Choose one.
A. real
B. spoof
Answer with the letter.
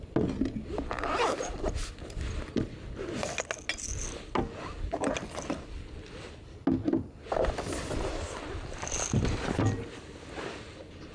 A